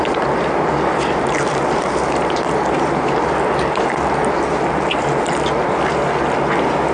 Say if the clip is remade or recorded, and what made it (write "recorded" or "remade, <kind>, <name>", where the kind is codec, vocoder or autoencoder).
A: recorded